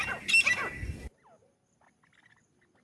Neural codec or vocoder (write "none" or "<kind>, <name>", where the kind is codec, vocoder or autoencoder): none